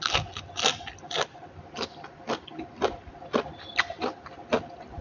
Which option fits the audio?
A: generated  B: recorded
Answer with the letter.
B